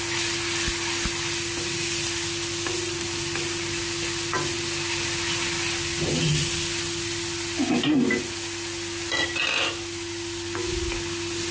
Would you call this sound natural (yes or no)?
yes